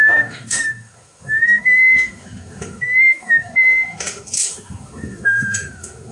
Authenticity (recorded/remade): remade